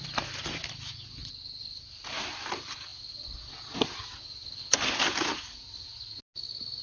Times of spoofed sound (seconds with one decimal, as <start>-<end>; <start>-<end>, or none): none